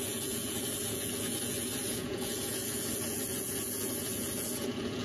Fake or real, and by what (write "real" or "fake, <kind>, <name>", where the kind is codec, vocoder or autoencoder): fake, vocoder, Vocos